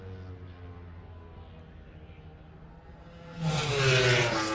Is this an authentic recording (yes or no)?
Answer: yes